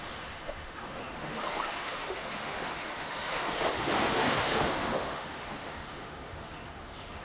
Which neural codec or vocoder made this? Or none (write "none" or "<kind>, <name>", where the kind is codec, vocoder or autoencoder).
autoencoder, DAC-VAE